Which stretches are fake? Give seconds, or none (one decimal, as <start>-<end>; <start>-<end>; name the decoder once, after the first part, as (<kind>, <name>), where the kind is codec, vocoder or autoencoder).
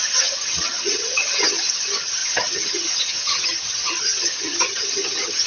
0.0-5.5 (vocoder, HiFi-GAN)